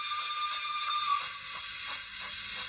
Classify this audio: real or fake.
real